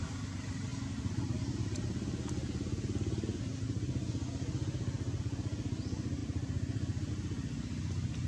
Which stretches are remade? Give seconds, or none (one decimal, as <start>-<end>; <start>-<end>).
none